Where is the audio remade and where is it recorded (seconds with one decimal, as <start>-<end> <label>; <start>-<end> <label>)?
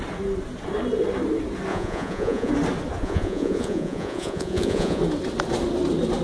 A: 0.0-1.7 recorded; 1.7-2.5 remade; 2.5-3.0 recorded; 3.0-5.0 remade; 5.0-6.2 recorded